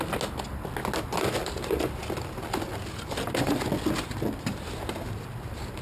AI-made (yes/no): no